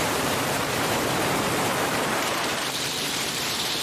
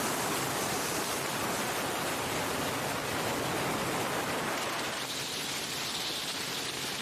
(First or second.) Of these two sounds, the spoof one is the first